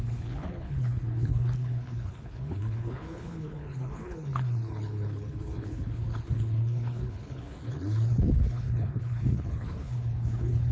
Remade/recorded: remade